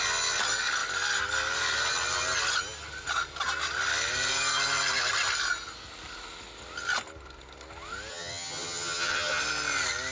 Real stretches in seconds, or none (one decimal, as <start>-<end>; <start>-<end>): 0.0-8.1; 9.4-10.1